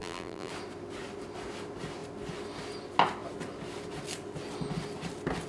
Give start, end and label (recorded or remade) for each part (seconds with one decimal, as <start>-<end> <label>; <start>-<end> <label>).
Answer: 0.0-0.5 remade; 0.5-5.5 recorded